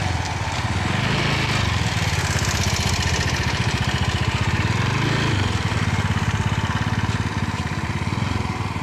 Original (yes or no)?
yes